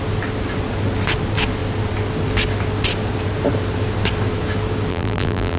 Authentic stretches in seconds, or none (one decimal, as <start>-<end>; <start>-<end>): 0.0-4.9